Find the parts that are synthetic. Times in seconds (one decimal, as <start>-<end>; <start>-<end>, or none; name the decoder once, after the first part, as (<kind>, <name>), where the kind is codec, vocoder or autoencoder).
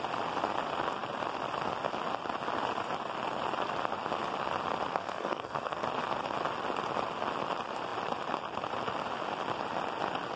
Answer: 4.9-5.8 (codec, SNAC)